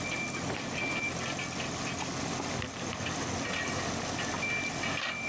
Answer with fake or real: real